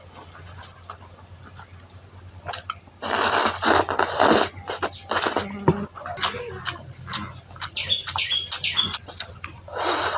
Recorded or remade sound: recorded